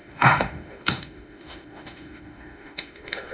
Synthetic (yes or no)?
yes